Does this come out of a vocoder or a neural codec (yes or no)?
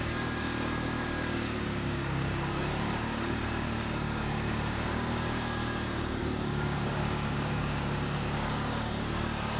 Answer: yes